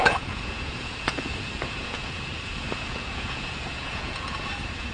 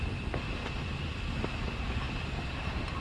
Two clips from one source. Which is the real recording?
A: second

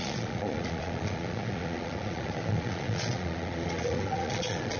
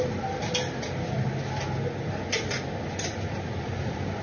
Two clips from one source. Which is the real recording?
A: second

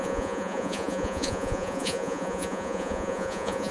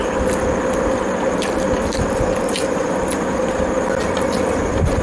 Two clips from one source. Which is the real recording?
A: second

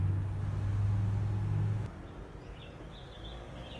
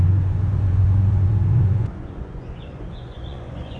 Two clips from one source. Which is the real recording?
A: first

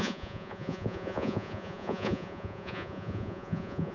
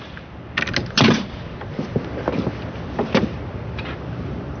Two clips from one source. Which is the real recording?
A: second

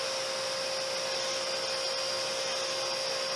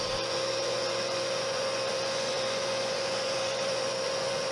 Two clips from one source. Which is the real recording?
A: first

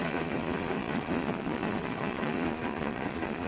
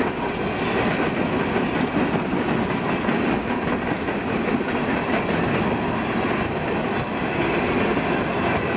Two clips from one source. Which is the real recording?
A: second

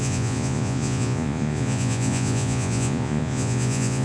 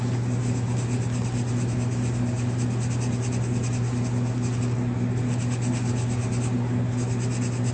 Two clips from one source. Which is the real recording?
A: second